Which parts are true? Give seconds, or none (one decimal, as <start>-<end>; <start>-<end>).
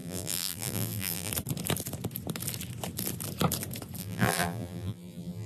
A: 1.3-4.0